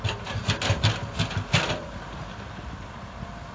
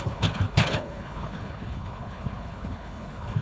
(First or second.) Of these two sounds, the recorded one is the first